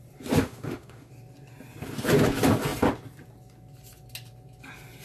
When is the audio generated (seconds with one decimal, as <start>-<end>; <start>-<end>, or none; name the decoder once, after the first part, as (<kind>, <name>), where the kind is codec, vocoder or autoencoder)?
0.4-1.1 (autoencoder, DAC-VAE)

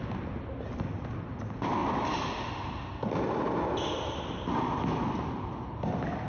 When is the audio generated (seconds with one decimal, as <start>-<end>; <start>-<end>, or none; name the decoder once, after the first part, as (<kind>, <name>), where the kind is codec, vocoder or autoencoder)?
none

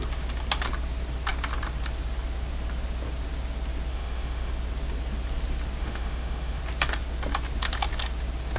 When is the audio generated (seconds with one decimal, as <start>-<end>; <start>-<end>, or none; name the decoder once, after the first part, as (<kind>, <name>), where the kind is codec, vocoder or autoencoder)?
3.9-4.5 (autoencoder, DAC-VAE); 5.8-6.6